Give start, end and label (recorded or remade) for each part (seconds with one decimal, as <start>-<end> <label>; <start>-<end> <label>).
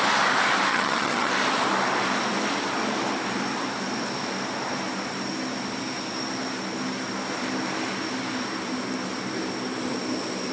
0.0-0.7 recorded; 0.7-1.3 remade; 1.3-10.5 recorded